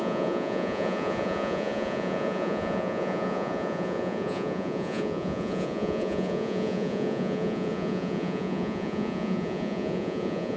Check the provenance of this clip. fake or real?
fake